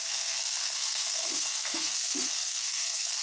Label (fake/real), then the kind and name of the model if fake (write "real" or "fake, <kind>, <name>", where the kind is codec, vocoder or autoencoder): fake, codec, SNAC